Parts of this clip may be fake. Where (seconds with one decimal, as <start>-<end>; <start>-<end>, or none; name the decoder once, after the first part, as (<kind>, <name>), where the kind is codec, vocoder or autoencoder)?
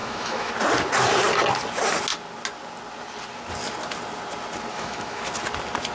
0.0-0.5 (autoencoder, DAC-VAE); 4.7-5.2